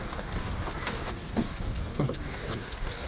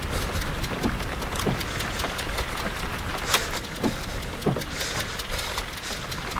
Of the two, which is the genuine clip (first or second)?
second